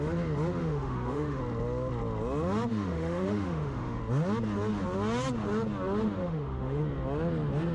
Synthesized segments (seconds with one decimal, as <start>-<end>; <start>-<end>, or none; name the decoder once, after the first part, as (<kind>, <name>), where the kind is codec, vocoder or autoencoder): 0.6-1.4 (autoencoder, DAC-VAE); 2.7-4.0; 6.2-6.8